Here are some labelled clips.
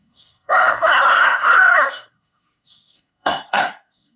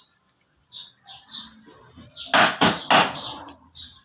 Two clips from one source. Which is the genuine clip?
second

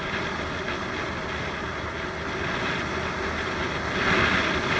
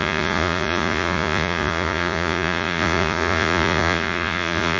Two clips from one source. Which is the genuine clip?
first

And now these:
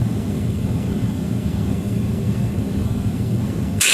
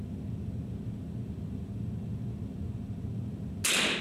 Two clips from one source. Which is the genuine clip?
second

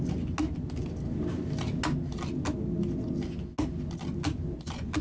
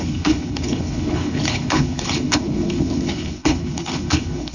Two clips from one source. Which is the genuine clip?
first